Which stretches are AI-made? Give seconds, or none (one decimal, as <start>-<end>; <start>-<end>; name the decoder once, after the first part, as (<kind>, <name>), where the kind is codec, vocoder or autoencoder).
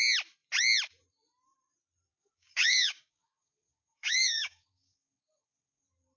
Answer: 2.1-5.8 (codec, DAC)